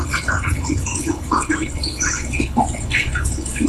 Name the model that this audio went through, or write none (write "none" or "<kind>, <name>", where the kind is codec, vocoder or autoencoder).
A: codec, HILCodec